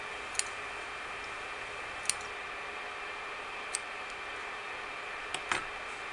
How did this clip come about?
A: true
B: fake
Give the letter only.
A